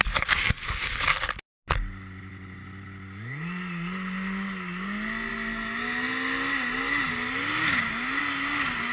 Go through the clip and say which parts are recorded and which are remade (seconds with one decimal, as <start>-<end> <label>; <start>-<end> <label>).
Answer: 0.0-8.9 recorded